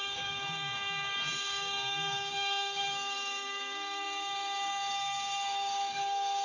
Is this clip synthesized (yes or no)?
yes